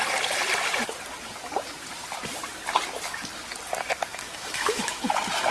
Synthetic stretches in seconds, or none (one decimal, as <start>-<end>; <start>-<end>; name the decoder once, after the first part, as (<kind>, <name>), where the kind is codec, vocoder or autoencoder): 4.1-5.1 (autoencoder, DAC-VAE)